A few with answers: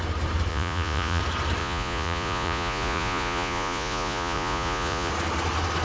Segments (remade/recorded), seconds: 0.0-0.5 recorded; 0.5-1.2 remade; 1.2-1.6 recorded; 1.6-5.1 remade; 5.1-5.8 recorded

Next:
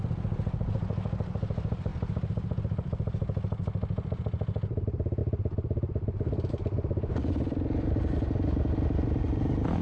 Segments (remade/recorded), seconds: 0.0-9.8 recorded

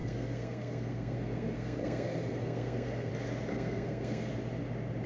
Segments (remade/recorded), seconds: 0.0-3.1 remade; 3.1-3.5 recorded; 3.5-4.3 remade; 4.3-5.1 recorded